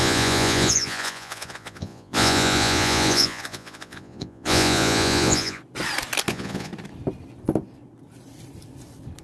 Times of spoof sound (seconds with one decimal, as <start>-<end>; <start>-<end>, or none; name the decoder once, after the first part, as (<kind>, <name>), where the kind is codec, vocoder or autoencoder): 0.0-5.6 (vocoder, Vocos); 6.3-6.7